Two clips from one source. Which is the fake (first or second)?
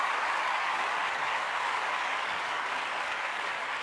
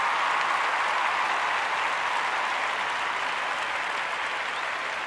first